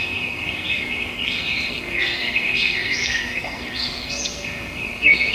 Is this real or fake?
fake